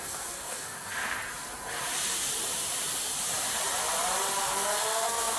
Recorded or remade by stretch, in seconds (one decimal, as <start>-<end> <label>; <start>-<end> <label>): 0.0-1.2 remade; 1.2-4.4 recorded; 4.4-5.4 remade